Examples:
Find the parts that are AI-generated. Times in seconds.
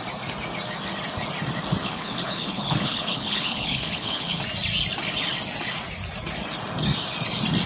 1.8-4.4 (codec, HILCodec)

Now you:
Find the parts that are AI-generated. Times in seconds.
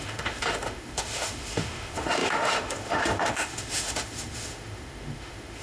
0.0-5.6 (autoencoder, DAC-VAE)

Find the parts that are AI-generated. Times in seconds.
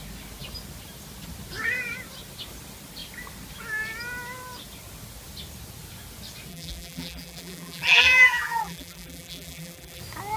6.5-10.0 (vocoder, BigVGAN v2)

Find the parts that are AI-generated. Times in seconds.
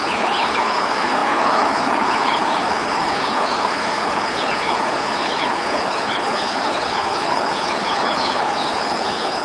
0.0-9.4 (codec, HILCodec)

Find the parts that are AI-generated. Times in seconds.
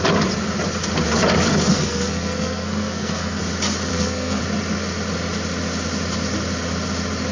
1.7-3.4 (codec, SNAC); 3.9-4.4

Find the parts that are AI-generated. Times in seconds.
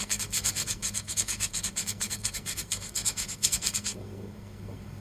0.0-5.0 (codec, SNAC)